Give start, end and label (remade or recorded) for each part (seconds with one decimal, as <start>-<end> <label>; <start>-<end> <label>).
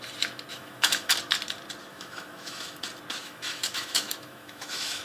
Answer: 0.0-0.5 recorded; 0.5-1.1 remade; 1.1-1.9 recorded; 1.9-2.8 remade; 2.8-3.2 recorded; 3.2-5.0 remade